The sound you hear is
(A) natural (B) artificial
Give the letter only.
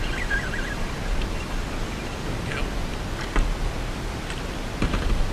A